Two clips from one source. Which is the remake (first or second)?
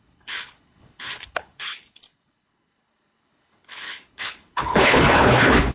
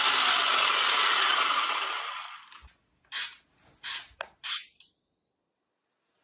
first